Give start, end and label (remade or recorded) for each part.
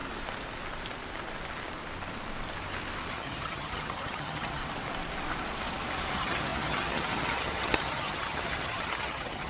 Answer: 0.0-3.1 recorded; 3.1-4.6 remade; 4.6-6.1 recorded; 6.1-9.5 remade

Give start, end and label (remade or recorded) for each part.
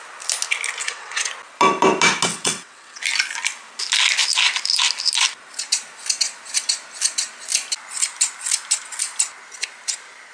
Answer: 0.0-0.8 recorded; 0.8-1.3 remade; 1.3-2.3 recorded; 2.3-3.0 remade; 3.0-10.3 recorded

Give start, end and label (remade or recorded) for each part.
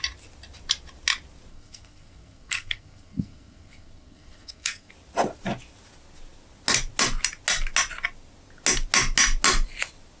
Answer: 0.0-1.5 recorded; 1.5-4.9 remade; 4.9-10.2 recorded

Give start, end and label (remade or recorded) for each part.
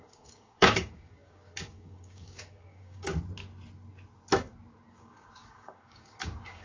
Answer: 0.0-3.1 remade; 3.1-4.9 recorded; 4.9-6.6 remade